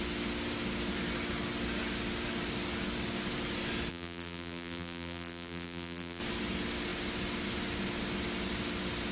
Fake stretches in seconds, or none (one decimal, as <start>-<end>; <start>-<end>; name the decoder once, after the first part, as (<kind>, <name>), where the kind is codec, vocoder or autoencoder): 3.9-6.2 (vocoder, BigVGAN v2)